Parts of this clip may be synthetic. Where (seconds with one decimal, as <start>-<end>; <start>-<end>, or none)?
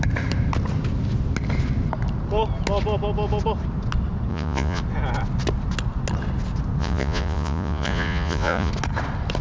4.3-4.8; 6.8-8.7